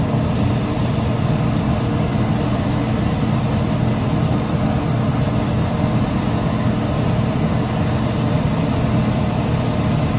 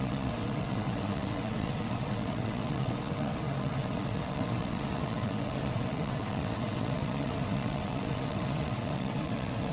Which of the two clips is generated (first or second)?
second